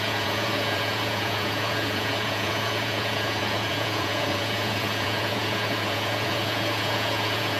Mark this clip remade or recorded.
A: remade